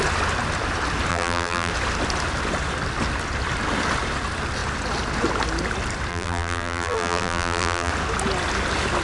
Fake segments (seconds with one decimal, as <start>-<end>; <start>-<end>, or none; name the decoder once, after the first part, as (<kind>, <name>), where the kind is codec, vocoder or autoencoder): 1.1-1.7 (vocoder, BigVGAN v2); 6.1-7.9